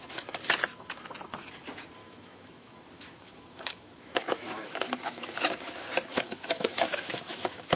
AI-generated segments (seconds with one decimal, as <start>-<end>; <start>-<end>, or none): 2.0-5.5; 6.1-7.8